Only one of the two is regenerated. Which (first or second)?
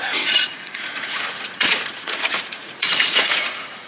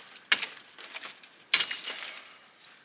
first